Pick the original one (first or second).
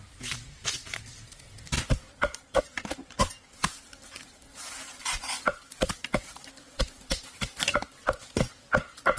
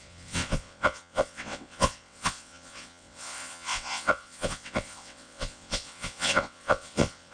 first